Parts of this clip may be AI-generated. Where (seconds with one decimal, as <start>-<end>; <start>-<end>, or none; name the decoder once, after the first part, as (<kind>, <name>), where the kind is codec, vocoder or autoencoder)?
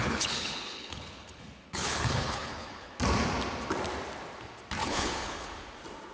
0.0-3.0 (codec, HILCodec); 4.8-5.5